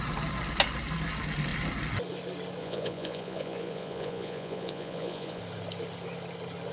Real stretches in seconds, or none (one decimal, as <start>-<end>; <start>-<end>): 0.0-2.6; 5.4-6.7